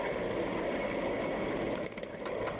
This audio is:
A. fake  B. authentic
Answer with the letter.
B